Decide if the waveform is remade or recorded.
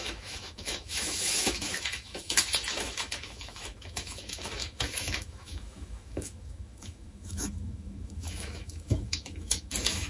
remade